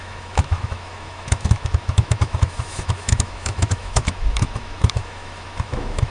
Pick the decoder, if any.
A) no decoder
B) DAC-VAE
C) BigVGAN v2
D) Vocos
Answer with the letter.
B